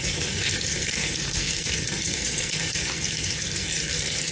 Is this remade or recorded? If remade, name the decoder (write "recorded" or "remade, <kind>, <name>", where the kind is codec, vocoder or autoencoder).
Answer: remade, codec, SNAC